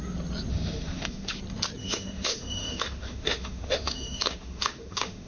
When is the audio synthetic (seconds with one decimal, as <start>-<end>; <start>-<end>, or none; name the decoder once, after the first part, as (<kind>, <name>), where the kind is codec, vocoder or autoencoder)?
0.5-1.4 (autoencoder, DAC-VAE); 1.8-5.3

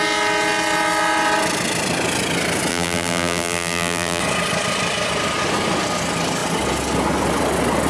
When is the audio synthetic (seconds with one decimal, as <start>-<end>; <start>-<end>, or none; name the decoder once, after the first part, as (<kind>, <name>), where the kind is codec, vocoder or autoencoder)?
2.7-4.2 (vocoder, BigVGAN v2)

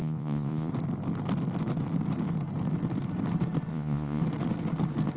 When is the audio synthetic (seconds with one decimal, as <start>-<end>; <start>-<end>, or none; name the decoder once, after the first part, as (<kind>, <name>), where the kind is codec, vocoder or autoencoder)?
0.0-0.7 (vocoder, Vocos); 3.7-4.2

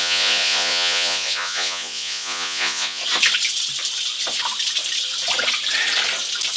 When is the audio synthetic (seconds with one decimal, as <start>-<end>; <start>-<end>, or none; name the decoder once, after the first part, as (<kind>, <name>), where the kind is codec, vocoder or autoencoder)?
0.0-3.0 (vocoder, Vocos)

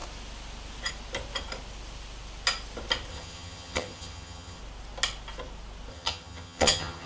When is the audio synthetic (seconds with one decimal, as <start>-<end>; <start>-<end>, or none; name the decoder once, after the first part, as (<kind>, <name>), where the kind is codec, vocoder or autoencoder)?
3.1-4.6 (vocoder, HiFi-GAN); 5.9-7.1

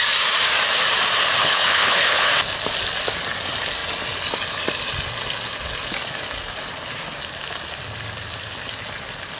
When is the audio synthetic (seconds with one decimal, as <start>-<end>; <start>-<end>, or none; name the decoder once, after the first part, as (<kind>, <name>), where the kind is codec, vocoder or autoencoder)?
1.4-2.3 (codec, HILCodec)